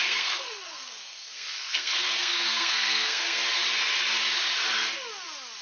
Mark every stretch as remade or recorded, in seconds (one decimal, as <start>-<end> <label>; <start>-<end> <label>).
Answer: 0.0-3.4 remade; 3.4-5.6 recorded